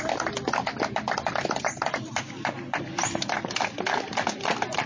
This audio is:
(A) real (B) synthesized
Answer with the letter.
A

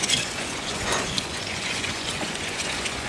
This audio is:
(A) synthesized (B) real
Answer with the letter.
A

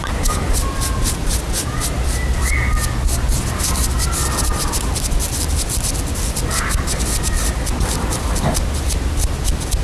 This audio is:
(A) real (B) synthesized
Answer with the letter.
A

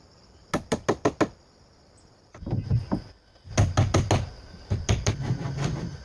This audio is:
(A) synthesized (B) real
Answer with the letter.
B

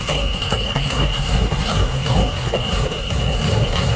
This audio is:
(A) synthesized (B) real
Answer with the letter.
A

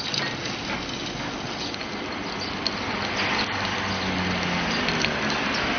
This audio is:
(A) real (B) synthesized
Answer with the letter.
A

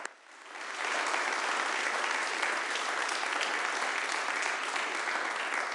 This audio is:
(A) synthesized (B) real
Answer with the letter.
B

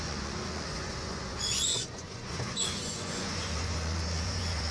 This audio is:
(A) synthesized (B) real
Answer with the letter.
A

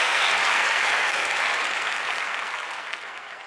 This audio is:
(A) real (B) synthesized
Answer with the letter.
B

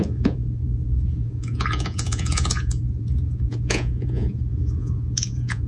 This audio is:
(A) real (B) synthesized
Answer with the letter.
B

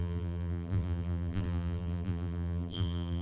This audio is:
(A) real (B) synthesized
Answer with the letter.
B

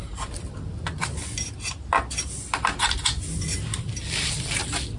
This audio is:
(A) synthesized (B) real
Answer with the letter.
B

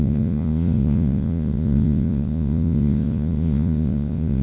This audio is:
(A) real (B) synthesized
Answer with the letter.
B